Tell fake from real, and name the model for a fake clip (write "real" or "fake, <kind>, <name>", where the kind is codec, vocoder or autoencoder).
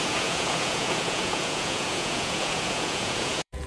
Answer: fake, vocoder, Vocos